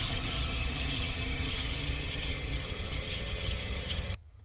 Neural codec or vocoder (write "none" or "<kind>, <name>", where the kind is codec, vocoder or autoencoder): vocoder, HiFi-GAN